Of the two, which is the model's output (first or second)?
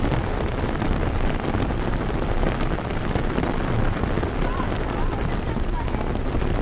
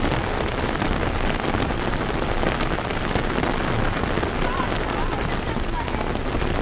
first